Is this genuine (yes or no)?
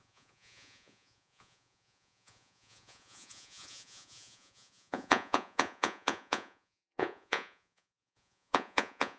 no